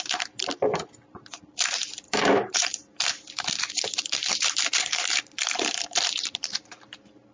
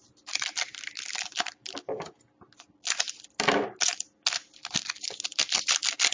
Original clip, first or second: second